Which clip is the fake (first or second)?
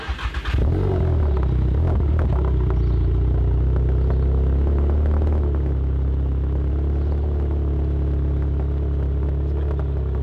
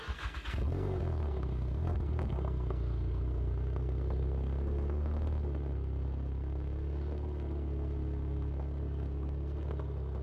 second